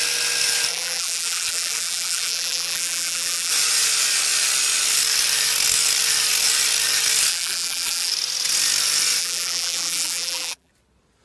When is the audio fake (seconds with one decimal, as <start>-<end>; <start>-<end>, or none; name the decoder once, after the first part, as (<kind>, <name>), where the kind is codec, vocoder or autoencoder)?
0.7-3.5 (vocoder, BigVGAN v2); 7.3-8.1; 9.2-10.7